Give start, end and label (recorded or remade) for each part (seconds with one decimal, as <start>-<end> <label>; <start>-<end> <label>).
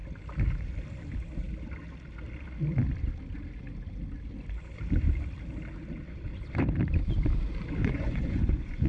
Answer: 0.0-7.8 recorded; 7.8-8.9 remade